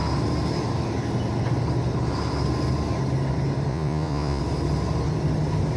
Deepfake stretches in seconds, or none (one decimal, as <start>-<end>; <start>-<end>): 3.7-4.4